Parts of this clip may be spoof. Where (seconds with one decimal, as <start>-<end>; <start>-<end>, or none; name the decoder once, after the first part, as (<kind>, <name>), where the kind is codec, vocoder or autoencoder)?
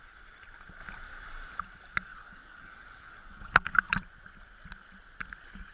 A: 2.1-3.9 (codec, DAC)